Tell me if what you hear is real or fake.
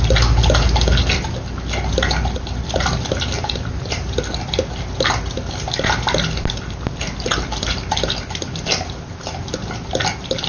real